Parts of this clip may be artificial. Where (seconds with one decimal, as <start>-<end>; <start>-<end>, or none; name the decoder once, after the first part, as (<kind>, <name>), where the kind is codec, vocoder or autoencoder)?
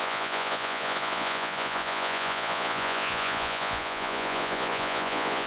0.0-5.5 (vocoder, Vocos)